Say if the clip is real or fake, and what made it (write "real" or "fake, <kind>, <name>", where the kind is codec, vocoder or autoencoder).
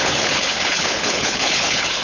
fake, codec, HILCodec